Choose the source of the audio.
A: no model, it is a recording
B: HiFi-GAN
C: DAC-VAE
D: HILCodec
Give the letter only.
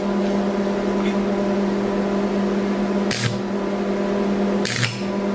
A